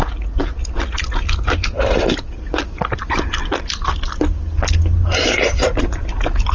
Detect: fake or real real